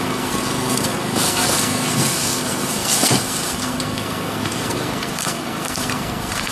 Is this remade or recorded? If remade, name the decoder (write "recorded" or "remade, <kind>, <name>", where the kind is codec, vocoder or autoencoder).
remade, codec, SNAC